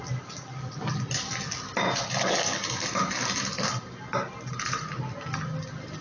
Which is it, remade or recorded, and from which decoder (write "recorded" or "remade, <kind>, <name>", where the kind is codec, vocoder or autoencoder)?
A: recorded